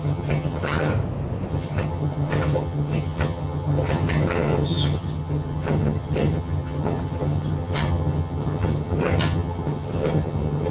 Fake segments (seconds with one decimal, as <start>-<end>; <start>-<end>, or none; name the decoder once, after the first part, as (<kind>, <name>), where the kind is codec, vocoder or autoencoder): 0.0-0.9 (vocoder, HiFi-GAN); 1.5-10.7